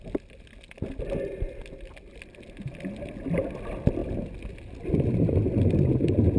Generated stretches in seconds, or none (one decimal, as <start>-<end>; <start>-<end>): none